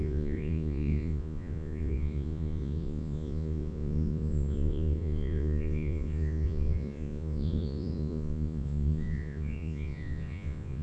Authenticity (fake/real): fake